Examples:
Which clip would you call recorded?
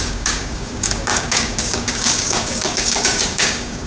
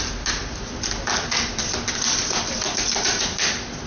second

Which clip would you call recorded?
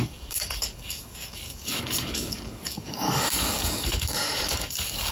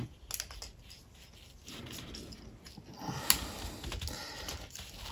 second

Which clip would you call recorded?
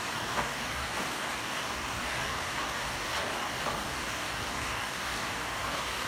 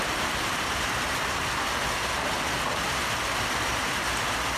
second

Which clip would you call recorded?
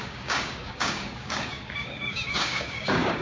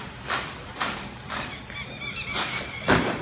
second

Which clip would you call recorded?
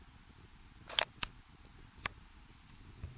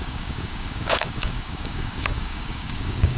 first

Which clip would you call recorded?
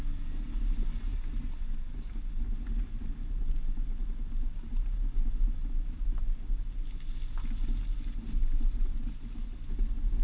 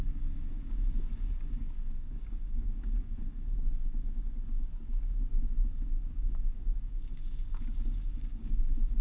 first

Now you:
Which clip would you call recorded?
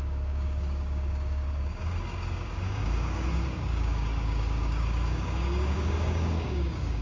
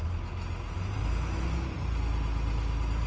second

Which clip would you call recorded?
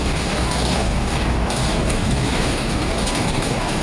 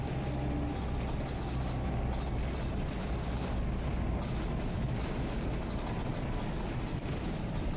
second